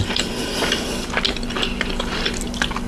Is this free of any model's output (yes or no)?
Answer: yes